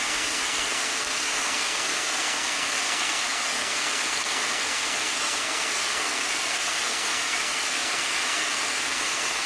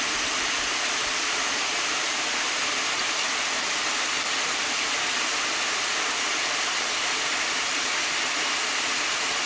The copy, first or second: first